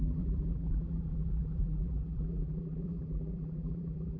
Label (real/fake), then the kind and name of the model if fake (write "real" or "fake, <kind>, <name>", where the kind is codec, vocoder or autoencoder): fake, vocoder, BigVGAN v2